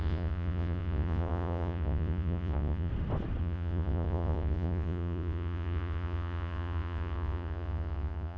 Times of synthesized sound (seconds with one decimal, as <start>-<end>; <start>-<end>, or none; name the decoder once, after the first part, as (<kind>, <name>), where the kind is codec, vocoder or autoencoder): 0.0-2.9 (vocoder, Vocos); 3.4-8.4